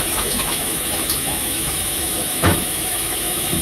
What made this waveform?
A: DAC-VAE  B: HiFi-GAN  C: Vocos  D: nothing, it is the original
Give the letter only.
A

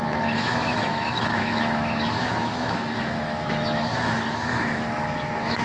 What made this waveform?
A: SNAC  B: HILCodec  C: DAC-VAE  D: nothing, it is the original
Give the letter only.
C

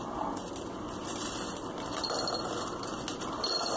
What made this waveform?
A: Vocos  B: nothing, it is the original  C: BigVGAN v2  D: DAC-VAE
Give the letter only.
B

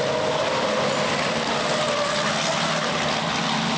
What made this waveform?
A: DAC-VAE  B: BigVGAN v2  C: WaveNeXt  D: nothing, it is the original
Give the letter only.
D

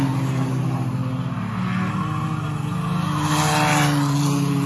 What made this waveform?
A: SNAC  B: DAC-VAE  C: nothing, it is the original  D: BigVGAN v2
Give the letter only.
C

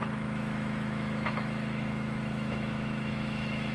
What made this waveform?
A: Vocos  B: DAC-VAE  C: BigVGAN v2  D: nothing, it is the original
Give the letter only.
B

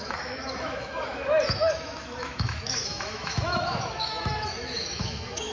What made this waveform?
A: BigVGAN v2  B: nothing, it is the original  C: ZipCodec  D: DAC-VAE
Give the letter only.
D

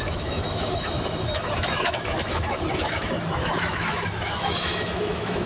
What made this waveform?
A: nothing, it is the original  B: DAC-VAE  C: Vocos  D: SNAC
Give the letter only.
B